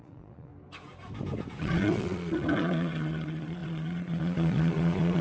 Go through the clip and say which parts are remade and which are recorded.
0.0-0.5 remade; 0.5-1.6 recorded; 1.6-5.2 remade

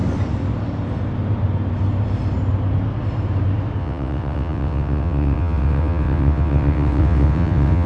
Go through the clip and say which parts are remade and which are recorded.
0.0-3.8 recorded; 3.8-7.9 remade

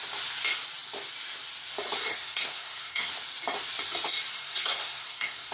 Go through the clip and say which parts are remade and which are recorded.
0.0-2.1 recorded; 2.1-3.1 remade; 3.1-4.3 recorded; 4.3-5.5 remade